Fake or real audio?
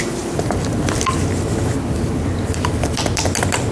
real